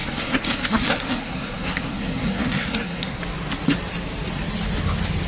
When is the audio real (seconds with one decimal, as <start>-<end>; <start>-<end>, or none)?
3.2-5.3